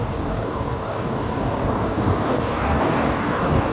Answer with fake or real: fake